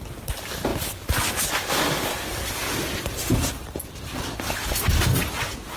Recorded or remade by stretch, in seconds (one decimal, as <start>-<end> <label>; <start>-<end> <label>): 0.0-0.7 recorded; 0.7-4.2 remade; 4.2-5.8 recorded